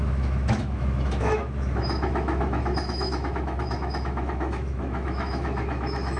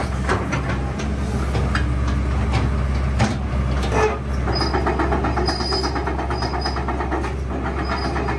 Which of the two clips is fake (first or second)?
first